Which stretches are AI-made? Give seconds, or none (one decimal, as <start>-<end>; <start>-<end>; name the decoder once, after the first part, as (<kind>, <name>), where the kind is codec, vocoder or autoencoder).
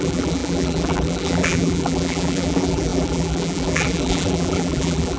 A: 0.0-5.2 (vocoder, BigVGAN v2)